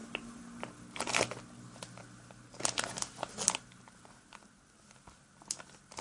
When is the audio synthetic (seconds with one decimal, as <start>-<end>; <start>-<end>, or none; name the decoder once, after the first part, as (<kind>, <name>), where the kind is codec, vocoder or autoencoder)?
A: none